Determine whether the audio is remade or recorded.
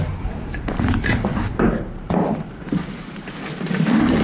remade